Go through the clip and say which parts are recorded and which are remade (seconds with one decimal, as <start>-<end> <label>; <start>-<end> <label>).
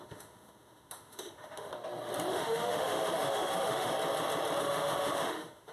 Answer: 0.0-1.7 remade; 1.7-2.3 recorded; 2.3-3.9 remade; 3.9-4.6 recorded; 4.6-5.7 remade